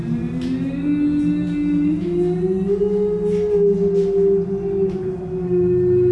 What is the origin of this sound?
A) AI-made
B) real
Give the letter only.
B